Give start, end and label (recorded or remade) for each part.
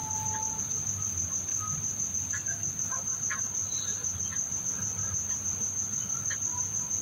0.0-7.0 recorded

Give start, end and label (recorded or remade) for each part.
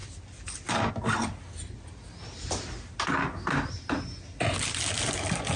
0.0-5.6 recorded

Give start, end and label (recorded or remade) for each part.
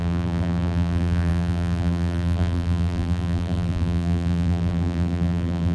0.0-5.7 remade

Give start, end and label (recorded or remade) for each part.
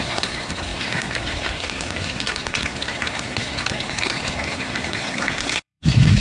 0.0-6.2 remade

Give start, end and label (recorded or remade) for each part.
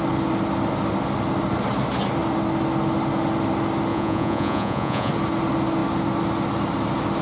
0.0-3.9 recorded; 3.9-5.1 remade; 5.1-7.2 recorded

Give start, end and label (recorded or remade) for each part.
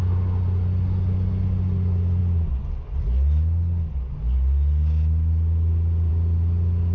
0.0-6.9 recorded